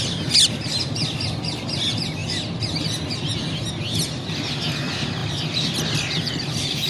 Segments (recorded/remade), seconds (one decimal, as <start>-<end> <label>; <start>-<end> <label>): 0.0-6.9 recorded